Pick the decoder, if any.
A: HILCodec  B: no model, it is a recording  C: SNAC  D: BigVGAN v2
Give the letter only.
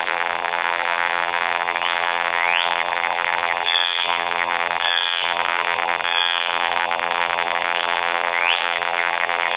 D